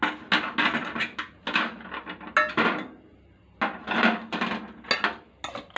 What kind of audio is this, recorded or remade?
recorded